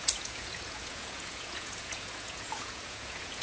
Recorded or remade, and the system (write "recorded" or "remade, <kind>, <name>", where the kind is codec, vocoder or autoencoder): remade, vocoder, Vocos